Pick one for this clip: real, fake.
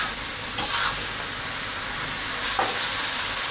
real